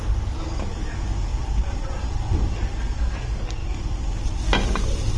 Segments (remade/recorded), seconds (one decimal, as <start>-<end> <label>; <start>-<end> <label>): 0.0-5.2 recorded